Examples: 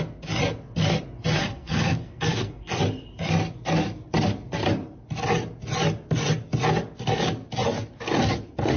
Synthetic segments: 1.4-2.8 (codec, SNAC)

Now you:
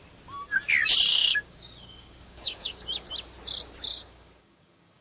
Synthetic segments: 1.1-3.1 (codec, DAC); 3.9-5.0

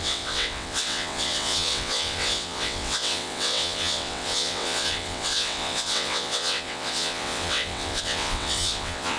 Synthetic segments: 0.0-9.2 (vocoder, WaveNeXt)

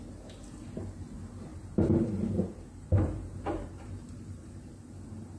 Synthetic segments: 1.5-4.7 (vocoder, BigVGAN v2)

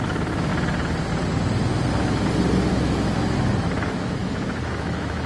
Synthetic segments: 0.0-0.5 (autoencoder, DAC-VAE); 2.7-5.3

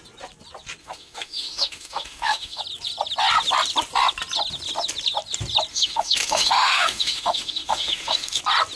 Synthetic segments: 0.8-2.6 (autoencoder, DAC-VAE); 5.7-8.4

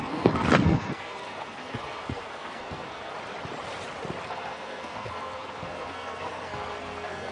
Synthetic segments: 0.0-3.1 (codec, SNAC); 4.2-7.3

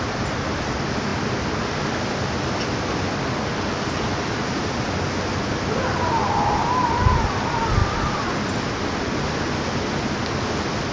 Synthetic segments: none